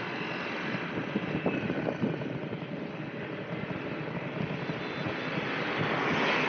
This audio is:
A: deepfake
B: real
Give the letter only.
B